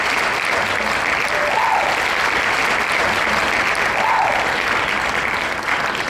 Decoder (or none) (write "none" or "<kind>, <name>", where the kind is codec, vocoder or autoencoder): none